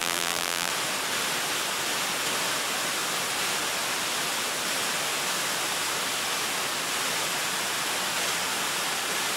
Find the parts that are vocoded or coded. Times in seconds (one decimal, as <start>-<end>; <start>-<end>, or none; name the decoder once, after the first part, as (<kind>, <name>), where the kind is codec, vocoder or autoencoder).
0.0-0.7 (vocoder, BigVGAN v2)